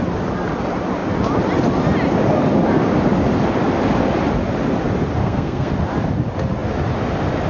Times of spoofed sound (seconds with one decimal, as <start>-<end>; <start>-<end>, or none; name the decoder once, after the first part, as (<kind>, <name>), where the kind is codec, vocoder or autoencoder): 5.2-5.7 (codec, SNAC)